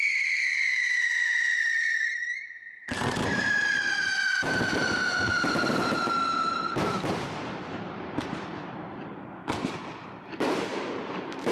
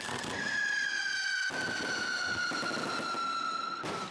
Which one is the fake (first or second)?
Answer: first